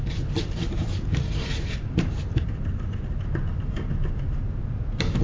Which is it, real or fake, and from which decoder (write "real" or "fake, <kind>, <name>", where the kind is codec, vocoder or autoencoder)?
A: fake, vocoder, BigVGAN v2